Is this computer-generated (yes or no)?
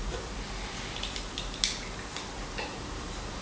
no